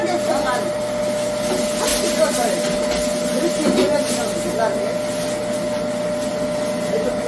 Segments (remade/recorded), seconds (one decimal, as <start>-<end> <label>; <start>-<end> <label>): 0.0-7.3 recorded